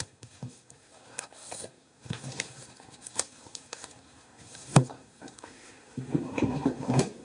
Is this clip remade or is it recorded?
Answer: remade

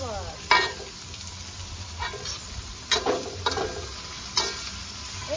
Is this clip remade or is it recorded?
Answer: recorded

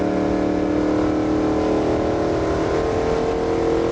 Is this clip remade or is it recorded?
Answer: recorded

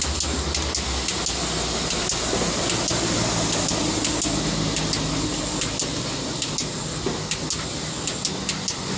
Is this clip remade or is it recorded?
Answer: recorded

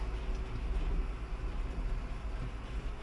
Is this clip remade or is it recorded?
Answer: recorded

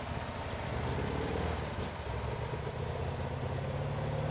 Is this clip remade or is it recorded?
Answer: recorded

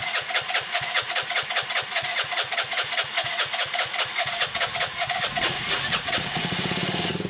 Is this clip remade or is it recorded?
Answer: remade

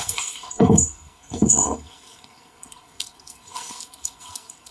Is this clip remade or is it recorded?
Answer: remade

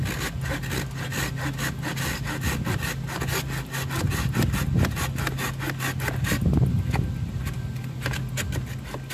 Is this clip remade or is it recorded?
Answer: recorded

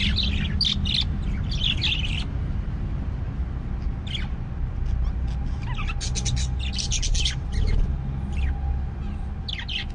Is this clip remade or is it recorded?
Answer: recorded